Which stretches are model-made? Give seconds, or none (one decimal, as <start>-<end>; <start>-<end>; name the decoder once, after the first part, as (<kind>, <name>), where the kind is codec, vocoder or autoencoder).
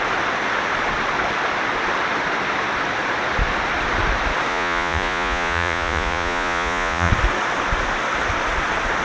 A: 4.5-7.1 (vocoder, Vocos)